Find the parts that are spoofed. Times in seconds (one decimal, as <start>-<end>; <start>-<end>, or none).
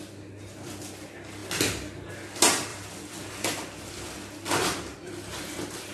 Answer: 2.7-5.1